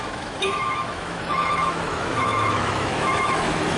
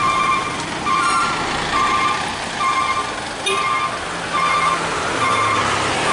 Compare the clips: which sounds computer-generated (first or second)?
first